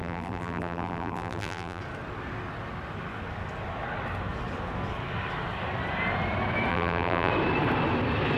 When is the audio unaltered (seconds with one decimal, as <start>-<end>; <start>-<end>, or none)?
1.8-6.7; 7.3-8.4